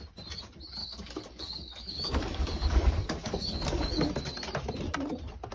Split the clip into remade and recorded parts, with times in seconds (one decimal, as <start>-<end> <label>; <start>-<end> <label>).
0.0-0.8 recorded; 0.8-4.1 remade; 4.1-5.5 recorded